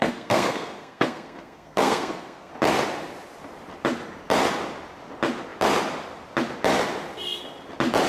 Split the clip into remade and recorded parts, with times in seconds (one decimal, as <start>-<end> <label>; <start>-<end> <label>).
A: 0.0-2.5 remade; 2.5-8.1 recorded